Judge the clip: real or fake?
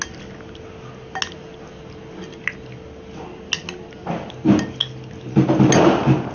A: real